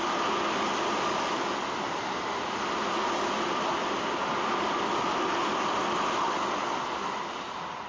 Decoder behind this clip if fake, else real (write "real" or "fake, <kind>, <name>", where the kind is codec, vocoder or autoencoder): real